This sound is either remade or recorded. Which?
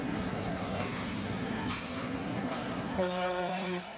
remade